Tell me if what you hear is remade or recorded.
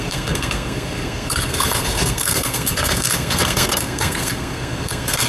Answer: remade